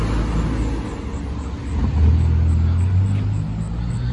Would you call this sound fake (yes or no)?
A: no